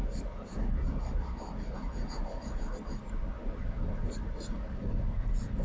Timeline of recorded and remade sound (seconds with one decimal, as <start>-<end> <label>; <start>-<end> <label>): 0.0-5.6 recorded